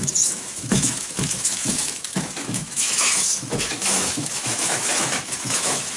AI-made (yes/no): yes